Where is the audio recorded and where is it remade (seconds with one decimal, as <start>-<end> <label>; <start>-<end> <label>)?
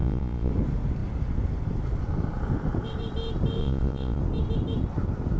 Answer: 0.0-0.5 remade; 0.5-3.6 recorded; 3.6-4.2 remade; 4.2-5.4 recorded